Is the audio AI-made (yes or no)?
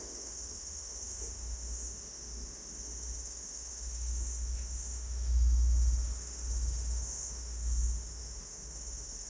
yes